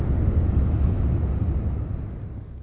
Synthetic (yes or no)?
no